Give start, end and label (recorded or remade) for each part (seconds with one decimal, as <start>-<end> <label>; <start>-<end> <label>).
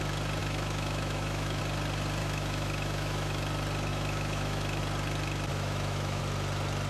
0.0-0.4 recorded; 0.4-1.6 remade; 1.6-2.2 recorded; 2.2-3.4 remade; 3.4-3.9 recorded; 3.9-4.8 remade; 4.8-5.5 recorded; 5.5-6.2 remade; 6.2-6.9 recorded